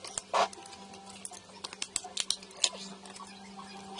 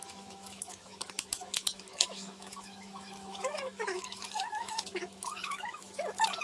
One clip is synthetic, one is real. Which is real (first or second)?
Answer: first